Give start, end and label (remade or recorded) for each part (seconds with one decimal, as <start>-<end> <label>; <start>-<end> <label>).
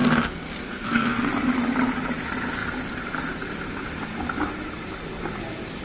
0.0-1.2 remade; 1.2-5.8 recorded